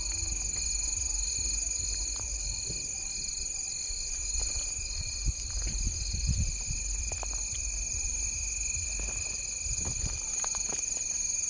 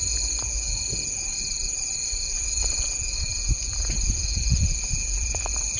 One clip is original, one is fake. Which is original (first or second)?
first